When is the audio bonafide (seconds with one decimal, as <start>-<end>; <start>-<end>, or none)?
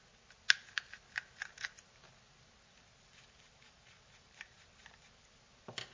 0.0-2.9; 5.2-5.9